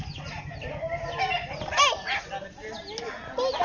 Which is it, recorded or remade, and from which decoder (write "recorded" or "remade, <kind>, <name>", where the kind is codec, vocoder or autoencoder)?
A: recorded